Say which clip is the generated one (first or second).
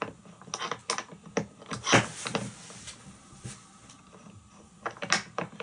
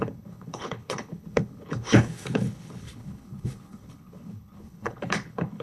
second